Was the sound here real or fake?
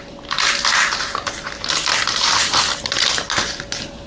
real